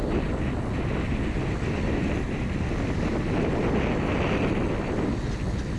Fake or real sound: real